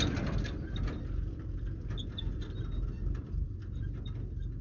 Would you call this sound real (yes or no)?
yes